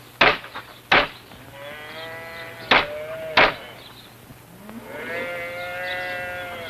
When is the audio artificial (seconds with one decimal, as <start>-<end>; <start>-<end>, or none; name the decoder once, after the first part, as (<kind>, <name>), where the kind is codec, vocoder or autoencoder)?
none

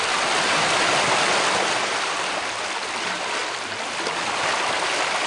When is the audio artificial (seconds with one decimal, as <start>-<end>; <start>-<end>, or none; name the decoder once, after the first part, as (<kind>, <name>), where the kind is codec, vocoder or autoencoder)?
none